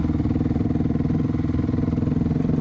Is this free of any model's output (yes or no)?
yes